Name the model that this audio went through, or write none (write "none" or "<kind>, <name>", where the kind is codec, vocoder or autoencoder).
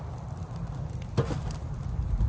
none